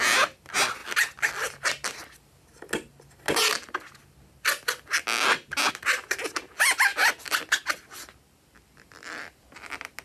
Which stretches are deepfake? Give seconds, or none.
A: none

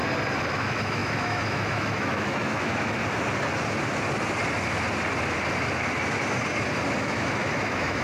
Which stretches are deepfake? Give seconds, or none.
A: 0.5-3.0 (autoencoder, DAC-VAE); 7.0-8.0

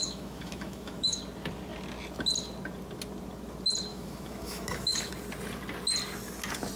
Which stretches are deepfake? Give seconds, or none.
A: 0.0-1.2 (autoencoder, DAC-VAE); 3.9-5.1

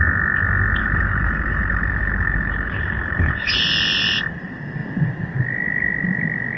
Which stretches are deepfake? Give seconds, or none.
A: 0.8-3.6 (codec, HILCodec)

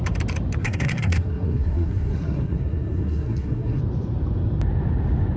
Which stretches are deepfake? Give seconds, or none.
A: 0.6-3.8 (codec, SNAC)

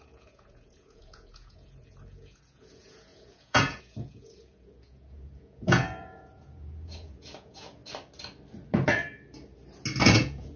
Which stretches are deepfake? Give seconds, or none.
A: 0.0-7.8 (vocoder, Vocos); 10.0-10.6